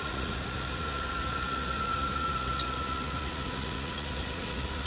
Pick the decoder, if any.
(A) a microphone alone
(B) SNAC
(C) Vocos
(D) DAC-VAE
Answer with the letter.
C